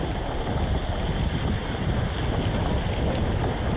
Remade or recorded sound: recorded